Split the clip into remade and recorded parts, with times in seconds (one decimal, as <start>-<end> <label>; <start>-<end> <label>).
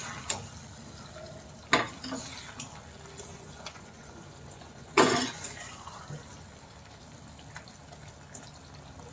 0.0-3.3 recorded; 3.3-6.0 remade; 6.0-9.1 recorded